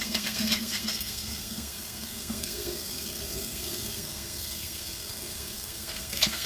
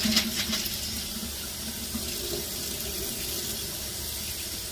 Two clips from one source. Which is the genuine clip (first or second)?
second